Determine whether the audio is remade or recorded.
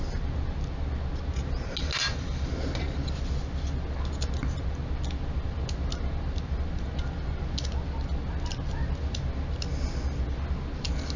recorded